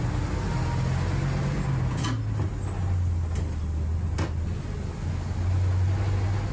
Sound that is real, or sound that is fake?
real